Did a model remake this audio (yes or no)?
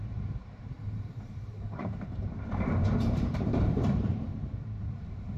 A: yes